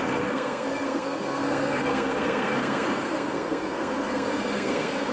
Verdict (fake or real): fake